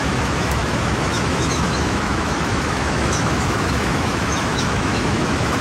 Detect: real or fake fake